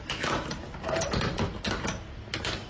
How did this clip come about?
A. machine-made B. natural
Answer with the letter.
B